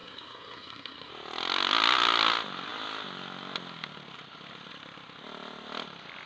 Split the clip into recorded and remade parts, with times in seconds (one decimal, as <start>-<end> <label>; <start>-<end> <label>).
0.0-1.1 remade; 1.1-6.3 recorded